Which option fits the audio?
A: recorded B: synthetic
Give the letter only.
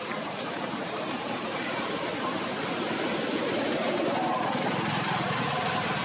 B